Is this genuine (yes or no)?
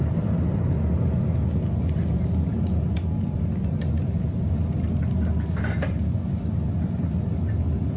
yes